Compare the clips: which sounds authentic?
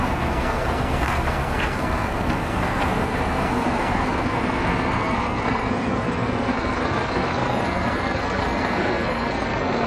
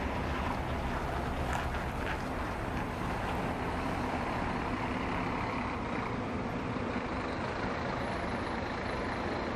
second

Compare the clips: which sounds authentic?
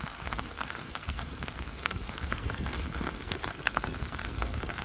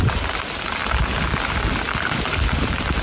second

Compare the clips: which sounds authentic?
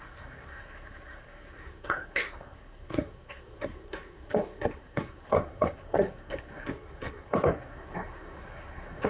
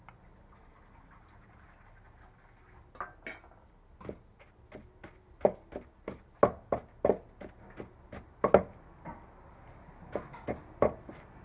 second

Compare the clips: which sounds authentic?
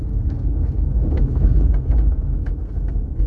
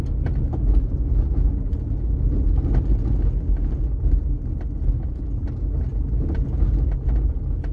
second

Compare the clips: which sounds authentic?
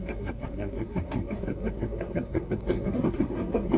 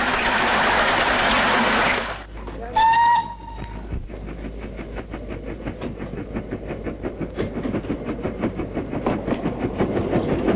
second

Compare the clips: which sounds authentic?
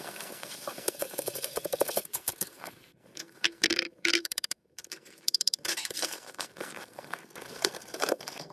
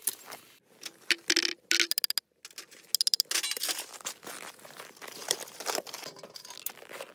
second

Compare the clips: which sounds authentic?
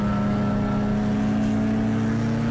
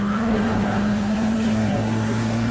first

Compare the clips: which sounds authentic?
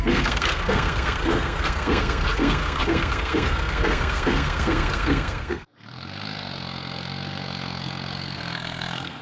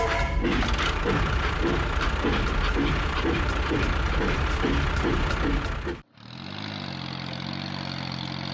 second